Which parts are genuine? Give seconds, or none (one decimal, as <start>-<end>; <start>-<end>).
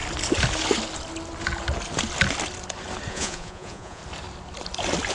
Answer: 0.0-3.1; 4.0-5.1